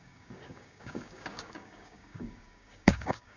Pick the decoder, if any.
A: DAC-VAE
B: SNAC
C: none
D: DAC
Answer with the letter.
D